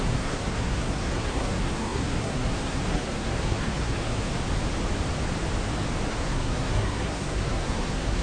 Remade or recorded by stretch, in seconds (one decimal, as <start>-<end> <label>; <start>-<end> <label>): 0.0-4.4 remade; 4.4-6.1 recorded; 6.1-8.2 remade

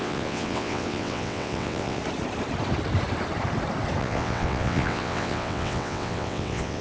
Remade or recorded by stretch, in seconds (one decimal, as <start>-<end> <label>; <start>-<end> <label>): 0.0-2.0 remade; 2.0-4.0 recorded; 4.0-6.8 remade